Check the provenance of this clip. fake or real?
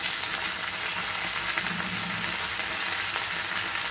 real